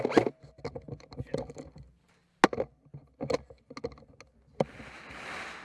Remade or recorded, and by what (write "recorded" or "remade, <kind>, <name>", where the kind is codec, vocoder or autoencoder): recorded